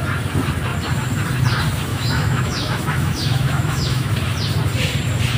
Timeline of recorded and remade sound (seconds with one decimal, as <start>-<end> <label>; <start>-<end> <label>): 0.0-1.9 recorded; 1.9-4.1 remade; 4.1-5.4 recorded